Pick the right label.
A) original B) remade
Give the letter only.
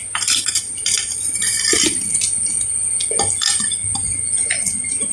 A